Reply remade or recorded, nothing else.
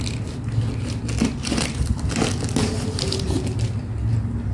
recorded